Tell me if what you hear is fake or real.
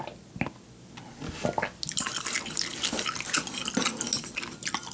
real